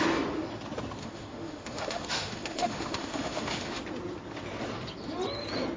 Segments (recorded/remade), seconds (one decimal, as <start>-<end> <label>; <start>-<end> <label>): 0.0-1.0 recorded; 1.0-3.8 remade; 3.8-5.8 recorded